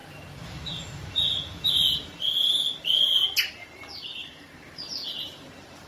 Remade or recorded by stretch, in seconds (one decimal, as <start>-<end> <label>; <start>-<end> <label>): 0.0-5.9 remade